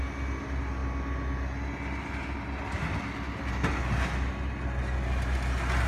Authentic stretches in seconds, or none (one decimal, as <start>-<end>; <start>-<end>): 0.0-5.9